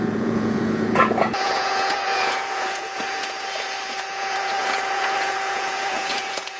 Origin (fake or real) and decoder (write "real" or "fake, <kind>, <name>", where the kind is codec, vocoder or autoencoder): fake, vocoder, Vocos